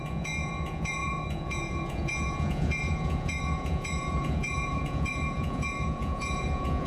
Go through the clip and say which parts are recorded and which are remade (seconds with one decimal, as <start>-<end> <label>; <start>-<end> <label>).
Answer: 0.0-6.9 remade

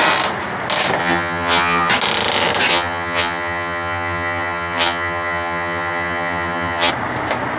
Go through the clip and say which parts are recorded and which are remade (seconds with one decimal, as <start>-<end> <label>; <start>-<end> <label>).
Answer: 0.0-1.0 recorded; 1.0-1.9 remade; 1.9-2.7 recorded; 2.7-6.9 remade; 6.9-7.6 recorded

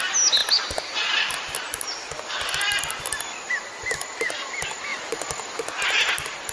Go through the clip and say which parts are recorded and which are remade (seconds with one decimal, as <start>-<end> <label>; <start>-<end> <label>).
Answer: 0.0-6.5 recorded

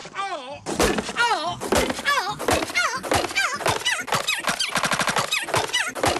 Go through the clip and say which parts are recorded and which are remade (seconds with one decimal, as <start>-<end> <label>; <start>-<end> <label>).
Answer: 0.0-6.2 recorded

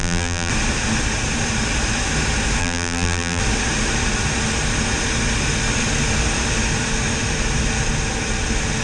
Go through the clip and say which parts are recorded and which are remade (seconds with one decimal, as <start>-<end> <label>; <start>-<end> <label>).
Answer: 0.0-0.5 remade; 0.5-2.6 recorded; 2.6-3.4 remade; 3.4-8.8 recorded

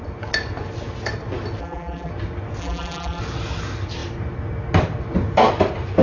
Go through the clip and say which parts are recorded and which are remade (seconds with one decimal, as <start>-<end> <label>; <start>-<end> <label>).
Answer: 0.0-1.6 recorded; 1.6-2.1 remade; 2.1-2.6 recorded; 2.6-3.2 remade; 3.2-6.0 recorded

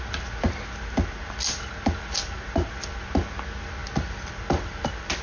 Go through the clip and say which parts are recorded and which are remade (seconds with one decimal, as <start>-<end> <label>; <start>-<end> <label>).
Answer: 0.0-5.2 recorded